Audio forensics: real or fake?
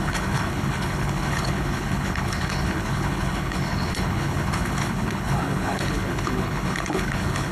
fake